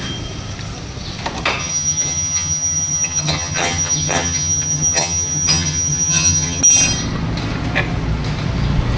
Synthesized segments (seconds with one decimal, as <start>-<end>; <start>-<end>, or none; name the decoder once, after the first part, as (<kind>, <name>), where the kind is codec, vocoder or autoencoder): 1.6-6.6 (vocoder, HiFi-GAN)